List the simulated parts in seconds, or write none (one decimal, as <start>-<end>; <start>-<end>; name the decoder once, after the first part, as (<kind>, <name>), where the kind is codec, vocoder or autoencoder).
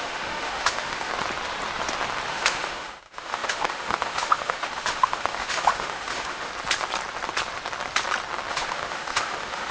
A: 0.0-1.1 (autoencoder, DAC-VAE); 2.3-6.5; 8.5-9.7